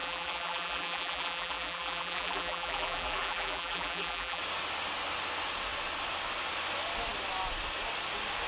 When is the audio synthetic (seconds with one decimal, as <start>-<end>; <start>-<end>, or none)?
0.0-4.4